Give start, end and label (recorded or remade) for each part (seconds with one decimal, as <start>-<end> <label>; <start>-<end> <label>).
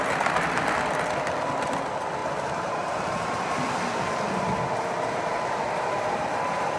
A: 0.0-2.2 recorded; 2.2-3.5 remade; 3.5-5.3 recorded; 5.3-6.8 remade